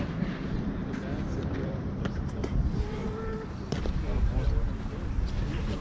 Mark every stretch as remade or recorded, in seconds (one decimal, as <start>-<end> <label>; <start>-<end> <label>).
0.0-0.8 remade; 0.8-1.4 recorded; 1.4-5.8 remade